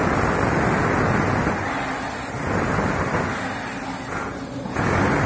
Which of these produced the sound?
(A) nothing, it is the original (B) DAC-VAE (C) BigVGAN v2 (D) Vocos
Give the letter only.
A